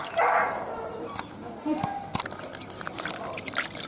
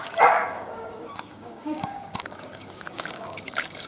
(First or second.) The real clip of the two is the first